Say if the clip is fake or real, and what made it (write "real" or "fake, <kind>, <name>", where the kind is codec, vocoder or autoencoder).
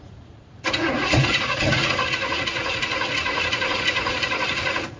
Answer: fake, vocoder, Vocos